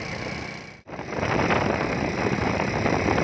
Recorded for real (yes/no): yes